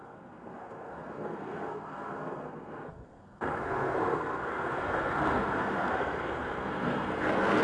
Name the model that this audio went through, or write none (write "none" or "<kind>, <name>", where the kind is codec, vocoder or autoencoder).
codec, SNAC